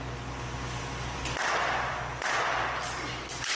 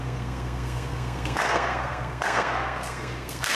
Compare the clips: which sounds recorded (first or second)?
first